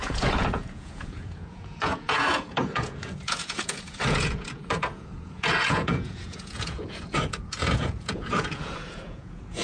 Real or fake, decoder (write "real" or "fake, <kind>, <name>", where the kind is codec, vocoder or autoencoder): fake, vocoder, Vocos